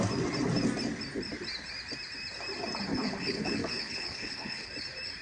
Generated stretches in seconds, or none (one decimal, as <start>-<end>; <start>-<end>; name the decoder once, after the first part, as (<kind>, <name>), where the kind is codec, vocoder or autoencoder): 2.9-4.7 (codec, HILCodec)